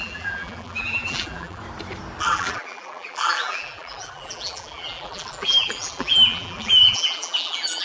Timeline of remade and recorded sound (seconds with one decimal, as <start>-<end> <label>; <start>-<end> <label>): 0.0-1.6 remade; 1.6-2.2 recorded; 2.2-7.8 remade